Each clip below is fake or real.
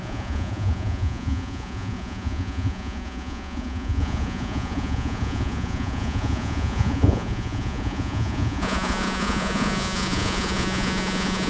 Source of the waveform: fake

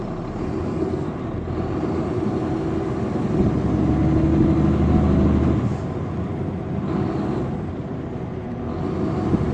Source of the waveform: real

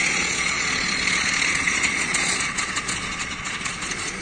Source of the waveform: fake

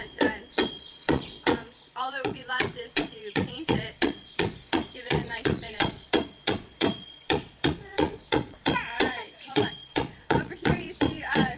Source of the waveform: fake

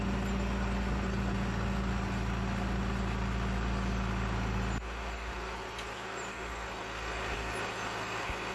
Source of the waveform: real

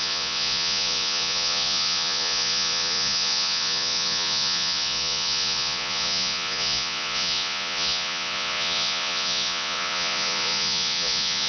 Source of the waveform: fake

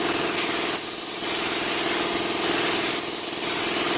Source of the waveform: real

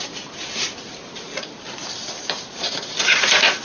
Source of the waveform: real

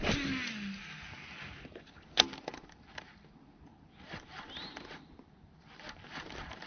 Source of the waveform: real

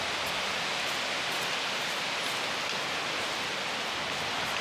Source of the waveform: real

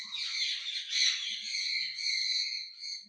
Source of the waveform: real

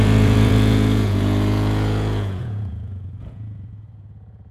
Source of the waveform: fake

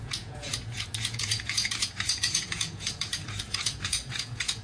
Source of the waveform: fake